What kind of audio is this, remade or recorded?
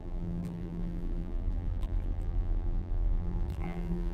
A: remade